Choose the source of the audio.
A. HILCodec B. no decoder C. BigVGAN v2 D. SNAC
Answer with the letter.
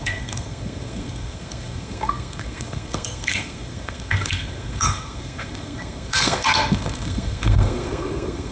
D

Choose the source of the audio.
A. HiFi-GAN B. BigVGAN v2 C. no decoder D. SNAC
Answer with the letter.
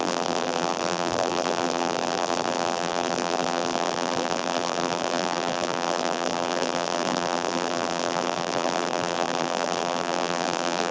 B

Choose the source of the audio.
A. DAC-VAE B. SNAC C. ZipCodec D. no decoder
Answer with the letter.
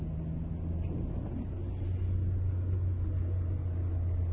D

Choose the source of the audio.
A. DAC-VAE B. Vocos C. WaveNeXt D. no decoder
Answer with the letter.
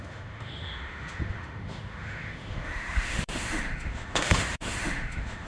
A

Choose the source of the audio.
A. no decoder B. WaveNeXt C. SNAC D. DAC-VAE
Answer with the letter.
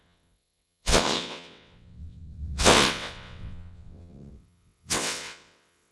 B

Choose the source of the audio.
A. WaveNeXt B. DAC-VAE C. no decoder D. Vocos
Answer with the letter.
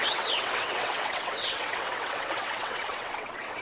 A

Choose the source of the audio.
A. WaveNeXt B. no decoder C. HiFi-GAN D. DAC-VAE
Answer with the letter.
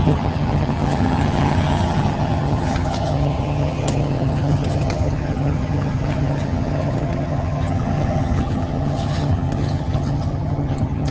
C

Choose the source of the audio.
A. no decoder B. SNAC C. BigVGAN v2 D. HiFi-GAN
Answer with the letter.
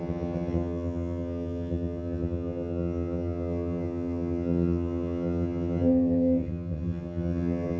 D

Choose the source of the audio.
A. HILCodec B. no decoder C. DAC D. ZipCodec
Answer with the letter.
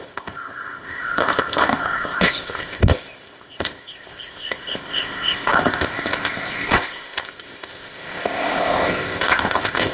D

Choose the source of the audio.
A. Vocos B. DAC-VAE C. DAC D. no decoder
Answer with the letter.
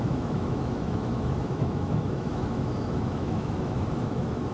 B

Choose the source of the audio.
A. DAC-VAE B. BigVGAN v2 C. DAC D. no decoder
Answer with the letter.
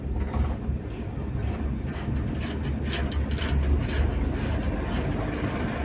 D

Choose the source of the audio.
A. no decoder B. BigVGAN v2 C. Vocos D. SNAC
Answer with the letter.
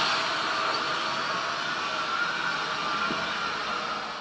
A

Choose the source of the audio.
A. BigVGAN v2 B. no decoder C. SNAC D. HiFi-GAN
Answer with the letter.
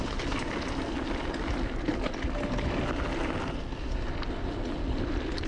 B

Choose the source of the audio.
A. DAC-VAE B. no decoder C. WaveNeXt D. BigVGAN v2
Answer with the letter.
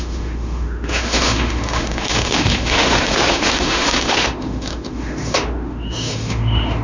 A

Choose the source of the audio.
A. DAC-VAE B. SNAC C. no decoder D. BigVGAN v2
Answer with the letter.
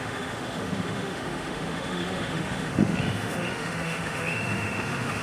A